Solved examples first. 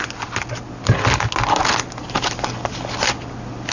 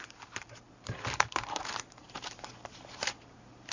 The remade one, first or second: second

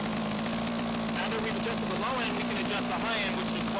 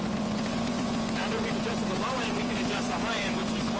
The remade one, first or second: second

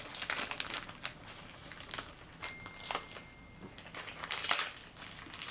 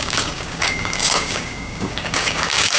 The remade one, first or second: second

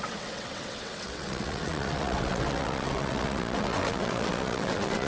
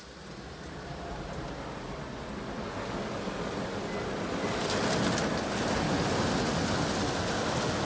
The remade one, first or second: first